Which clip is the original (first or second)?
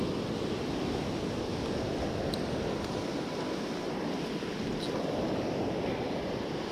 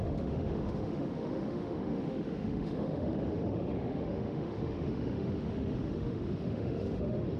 first